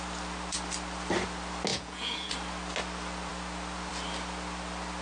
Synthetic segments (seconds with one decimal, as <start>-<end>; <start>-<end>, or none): 1.7-2.3